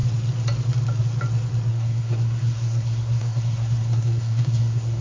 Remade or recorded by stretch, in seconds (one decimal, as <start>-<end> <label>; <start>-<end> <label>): 0.0-1.7 recorded; 1.7-5.0 remade

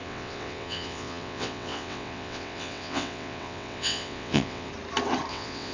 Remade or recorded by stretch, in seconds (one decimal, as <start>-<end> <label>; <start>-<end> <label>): 0.0-4.7 remade; 4.7-5.3 recorded; 5.3-5.7 remade

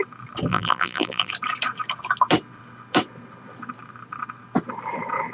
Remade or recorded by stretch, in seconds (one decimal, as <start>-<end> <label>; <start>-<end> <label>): 0.0-0.5 recorded; 0.5-1.3 remade; 1.3-5.3 recorded

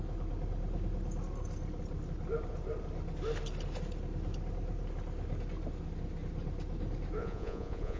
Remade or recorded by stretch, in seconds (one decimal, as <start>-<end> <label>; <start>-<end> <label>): 0.0-7.2 recorded; 7.2-8.0 remade

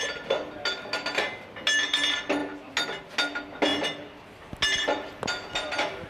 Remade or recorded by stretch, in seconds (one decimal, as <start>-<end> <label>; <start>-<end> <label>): 0.0-6.1 recorded